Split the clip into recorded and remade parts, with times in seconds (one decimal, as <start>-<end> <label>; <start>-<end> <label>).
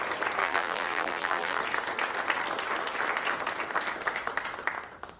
0.0-0.4 recorded; 0.4-1.6 remade; 1.6-5.2 recorded